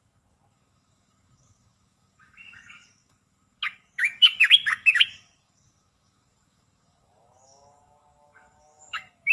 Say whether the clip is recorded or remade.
remade